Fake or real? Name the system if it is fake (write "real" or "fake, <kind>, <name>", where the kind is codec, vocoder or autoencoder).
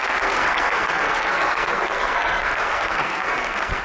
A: fake, codec, SNAC